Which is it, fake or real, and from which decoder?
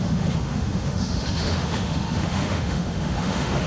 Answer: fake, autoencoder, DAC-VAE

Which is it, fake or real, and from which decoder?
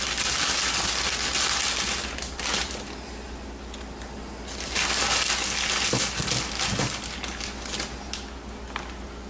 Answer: real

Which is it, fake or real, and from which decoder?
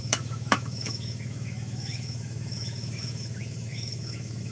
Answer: fake, autoencoder, DAC-VAE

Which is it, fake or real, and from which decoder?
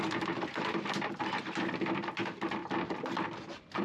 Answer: real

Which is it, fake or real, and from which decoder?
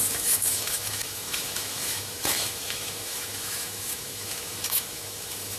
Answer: fake, autoencoder, DAC-VAE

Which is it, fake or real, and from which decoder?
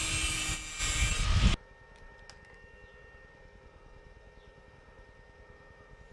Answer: real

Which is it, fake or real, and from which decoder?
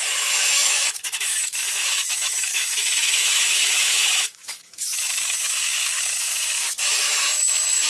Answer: fake, autoencoder, DAC-VAE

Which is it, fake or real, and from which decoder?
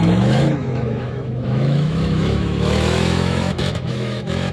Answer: fake, autoencoder, DAC-VAE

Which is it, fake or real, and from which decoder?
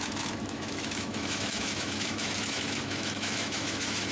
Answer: fake, autoencoder, DAC-VAE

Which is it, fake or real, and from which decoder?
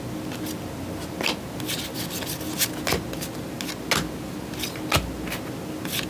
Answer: real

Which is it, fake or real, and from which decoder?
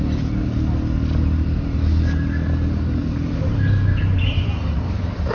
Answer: real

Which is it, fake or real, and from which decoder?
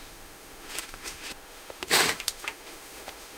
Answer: fake, autoencoder, DAC-VAE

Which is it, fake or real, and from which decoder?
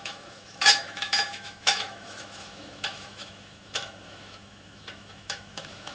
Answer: fake, autoencoder, DAC-VAE